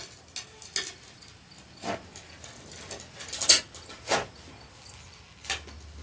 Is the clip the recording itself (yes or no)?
yes